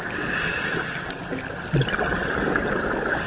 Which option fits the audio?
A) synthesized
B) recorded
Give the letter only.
B